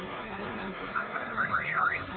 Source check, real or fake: fake